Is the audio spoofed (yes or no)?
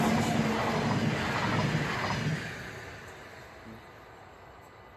no